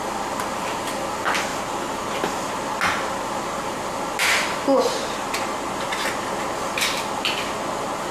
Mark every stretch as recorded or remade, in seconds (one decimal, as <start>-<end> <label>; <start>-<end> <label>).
0.0-8.1 recorded